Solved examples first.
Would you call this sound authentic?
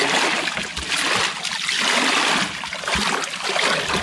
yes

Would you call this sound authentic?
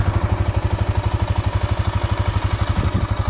yes